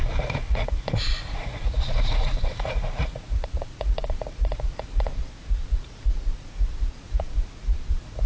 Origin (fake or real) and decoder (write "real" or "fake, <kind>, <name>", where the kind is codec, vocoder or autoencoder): fake, vocoder, Vocos